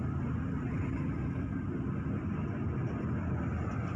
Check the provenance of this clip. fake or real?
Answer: real